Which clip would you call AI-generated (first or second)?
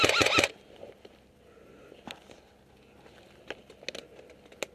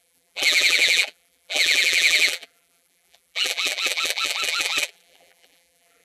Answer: second